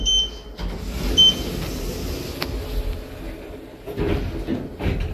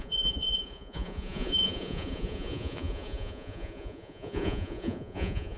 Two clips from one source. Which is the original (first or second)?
first